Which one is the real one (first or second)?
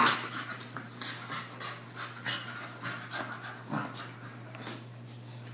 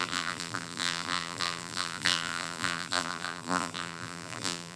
first